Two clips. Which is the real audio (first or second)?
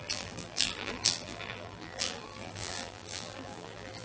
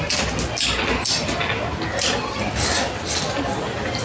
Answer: second